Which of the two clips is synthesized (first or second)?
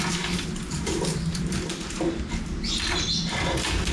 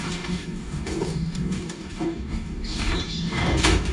second